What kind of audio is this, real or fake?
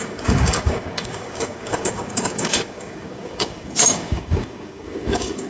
fake